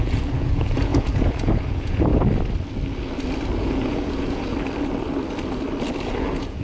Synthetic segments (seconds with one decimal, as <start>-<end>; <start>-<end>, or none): 0.0-2.1; 3.6-4.5; 6.0-6.6